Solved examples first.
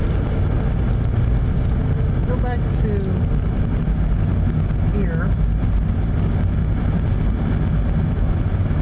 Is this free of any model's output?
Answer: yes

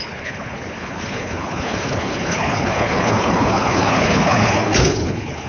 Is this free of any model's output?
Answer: no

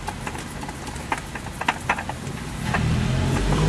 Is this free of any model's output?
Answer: yes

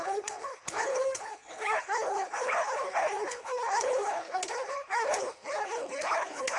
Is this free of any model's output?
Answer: no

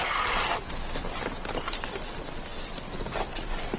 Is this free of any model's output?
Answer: yes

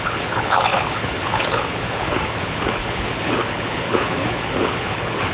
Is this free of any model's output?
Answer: no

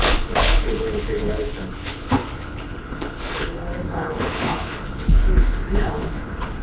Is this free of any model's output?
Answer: no